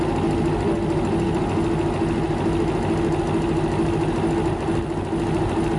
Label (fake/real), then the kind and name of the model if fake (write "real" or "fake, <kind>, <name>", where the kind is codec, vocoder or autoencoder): real